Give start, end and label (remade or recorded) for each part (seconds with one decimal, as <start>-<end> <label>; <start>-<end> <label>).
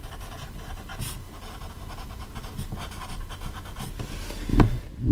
0.0-5.1 recorded